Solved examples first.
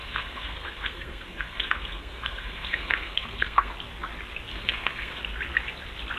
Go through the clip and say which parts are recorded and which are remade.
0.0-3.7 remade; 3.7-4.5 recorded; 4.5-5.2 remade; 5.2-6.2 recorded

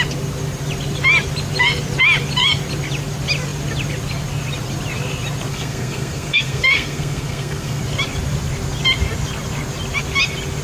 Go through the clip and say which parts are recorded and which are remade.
0.0-5.5 recorded; 5.5-7.8 remade; 7.8-10.6 recorded

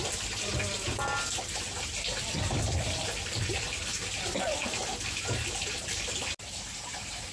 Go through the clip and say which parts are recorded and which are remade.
0.0-7.3 recorded

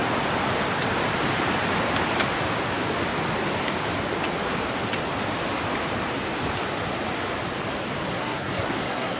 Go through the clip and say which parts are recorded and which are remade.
0.0-8.1 recorded; 8.1-9.2 remade

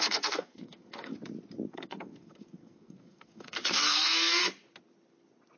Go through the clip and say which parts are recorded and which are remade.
0.0-1.1 remade; 1.1-1.7 recorded; 1.7-4.4 remade; 4.4-5.6 recorded

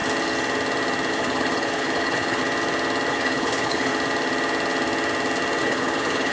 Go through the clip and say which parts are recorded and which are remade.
0.0-1.1 recorded; 1.1-2.4 remade; 2.4-3.1 recorded; 3.1-3.9 remade; 3.9-5.6 recorded; 5.6-6.3 remade

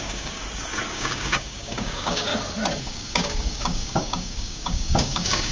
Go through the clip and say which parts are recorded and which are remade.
0.0-0.4 remade; 0.4-0.9 recorded; 0.9-2.3 remade; 2.3-2.8 recorded; 2.8-5.5 remade